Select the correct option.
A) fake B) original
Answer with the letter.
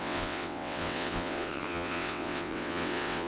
A